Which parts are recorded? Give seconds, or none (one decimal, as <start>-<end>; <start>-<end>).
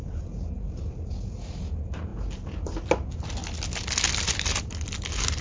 0.0-5.4